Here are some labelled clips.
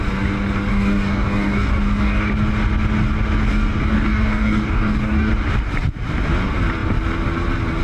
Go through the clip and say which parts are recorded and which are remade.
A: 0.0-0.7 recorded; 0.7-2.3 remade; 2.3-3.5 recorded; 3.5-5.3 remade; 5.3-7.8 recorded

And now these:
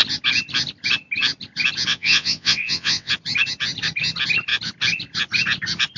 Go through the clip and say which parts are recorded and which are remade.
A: 0.0-1.9 recorded; 1.9-3.1 remade; 3.1-6.0 recorded

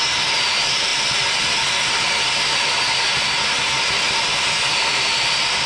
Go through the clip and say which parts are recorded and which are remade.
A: 0.0-5.7 recorded

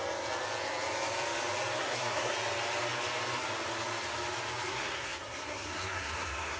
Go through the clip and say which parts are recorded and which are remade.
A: 0.0-1.8 recorded; 1.8-2.3 remade; 2.3-4.7 recorded; 4.7-6.6 remade

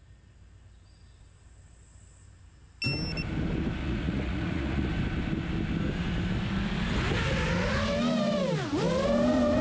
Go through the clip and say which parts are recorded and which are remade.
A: 0.0-3.8 recorded; 3.8-4.9 remade; 4.9-9.6 recorded

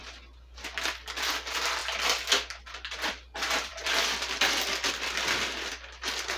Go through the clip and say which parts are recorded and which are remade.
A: 0.0-6.4 recorded

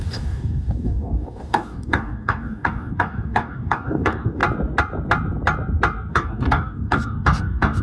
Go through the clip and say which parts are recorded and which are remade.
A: 0.0-4.4 remade; 4.4-6.1 recorded; 6.1-7.8 remade